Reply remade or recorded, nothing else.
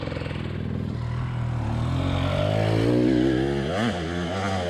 recorded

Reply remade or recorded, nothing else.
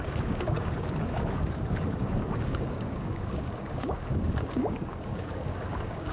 remade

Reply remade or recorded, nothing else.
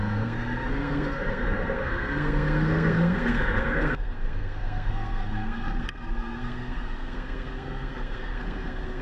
remade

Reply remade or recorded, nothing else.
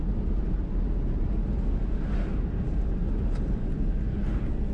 recorded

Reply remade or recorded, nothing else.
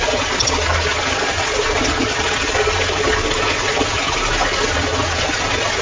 recorded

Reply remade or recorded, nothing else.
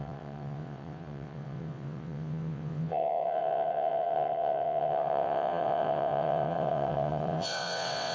remade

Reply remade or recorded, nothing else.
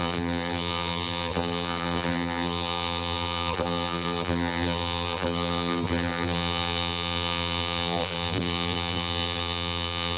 remade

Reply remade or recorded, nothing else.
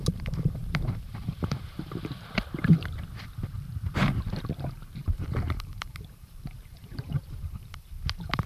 remade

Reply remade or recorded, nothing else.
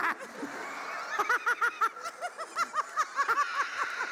recorded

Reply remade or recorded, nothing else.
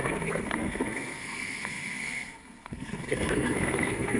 remade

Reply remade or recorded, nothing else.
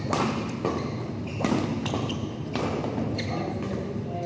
recorded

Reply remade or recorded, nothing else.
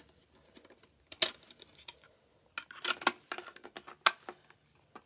recorded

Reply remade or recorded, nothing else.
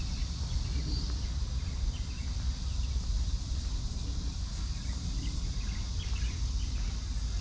recorded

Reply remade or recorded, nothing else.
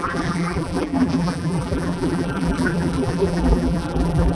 remade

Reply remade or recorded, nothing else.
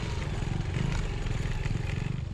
recorded